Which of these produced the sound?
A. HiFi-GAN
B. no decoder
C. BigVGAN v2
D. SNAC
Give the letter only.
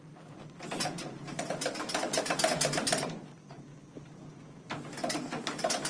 B